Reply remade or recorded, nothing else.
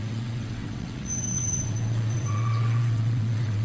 remade